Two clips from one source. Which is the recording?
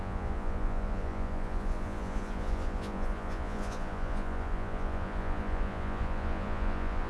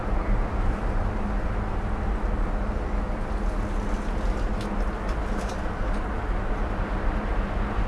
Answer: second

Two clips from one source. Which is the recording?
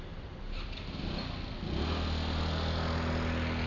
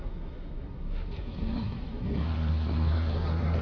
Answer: first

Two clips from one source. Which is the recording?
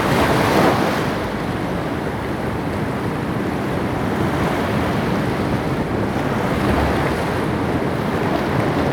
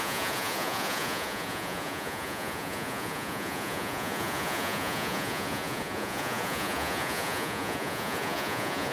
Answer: first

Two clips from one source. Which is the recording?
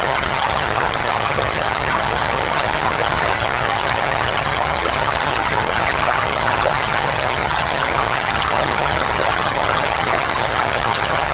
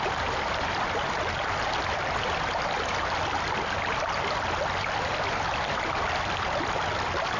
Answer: second